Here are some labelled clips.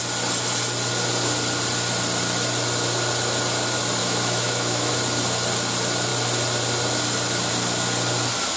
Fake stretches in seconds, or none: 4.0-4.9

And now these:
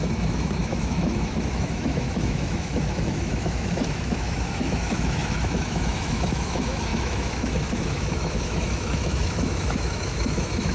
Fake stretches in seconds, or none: 0.0-10.7

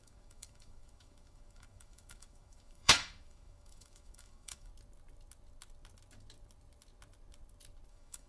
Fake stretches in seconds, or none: 0.0-4.7; 7.9-8.3

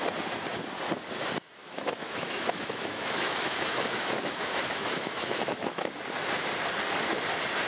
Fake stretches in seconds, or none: 1.6-5.9